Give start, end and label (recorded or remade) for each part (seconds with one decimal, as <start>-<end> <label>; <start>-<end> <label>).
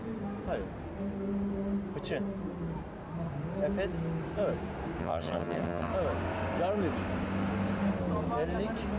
0.0-5.0 recorded; 5.0-5.9 remade; 5.9-9.0 recorded